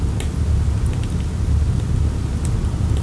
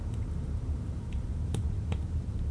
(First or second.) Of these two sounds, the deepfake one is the second